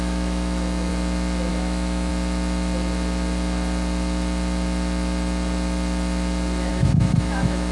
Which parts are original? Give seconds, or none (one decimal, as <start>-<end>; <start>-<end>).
0.9-1.5; 2.1-6.7